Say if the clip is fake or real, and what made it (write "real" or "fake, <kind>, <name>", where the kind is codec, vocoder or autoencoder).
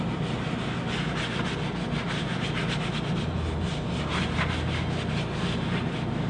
real